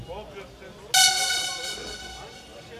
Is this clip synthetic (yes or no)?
no